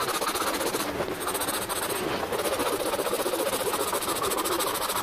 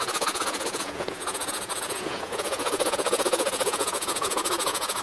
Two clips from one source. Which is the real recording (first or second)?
first